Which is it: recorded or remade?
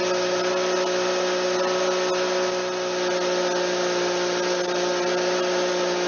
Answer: recorded